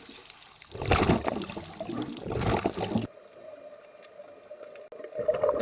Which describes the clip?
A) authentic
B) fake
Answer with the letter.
A